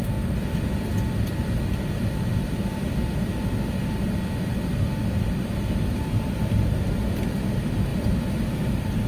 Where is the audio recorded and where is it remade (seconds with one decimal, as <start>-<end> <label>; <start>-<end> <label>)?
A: 0.0-9.1 recorded